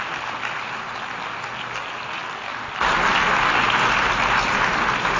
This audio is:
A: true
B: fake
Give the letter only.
A